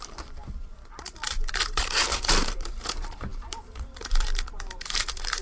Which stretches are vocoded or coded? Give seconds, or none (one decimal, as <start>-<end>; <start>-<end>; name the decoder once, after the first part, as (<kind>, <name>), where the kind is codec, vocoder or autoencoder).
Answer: 0.0-0.9 (vocoder, BigVGAN v2); 1.5-5.4